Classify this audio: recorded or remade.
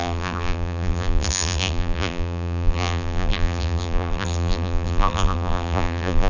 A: remade